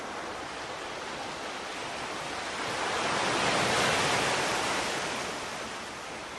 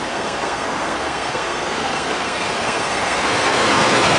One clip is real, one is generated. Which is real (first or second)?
first